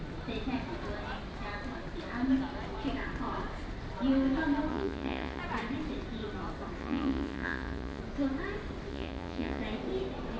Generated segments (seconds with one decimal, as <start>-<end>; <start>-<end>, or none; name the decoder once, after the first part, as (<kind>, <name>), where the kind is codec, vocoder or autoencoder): 4.7-5.4 (vocoder, Vocos); 6.8-8.0; 8.9-9.6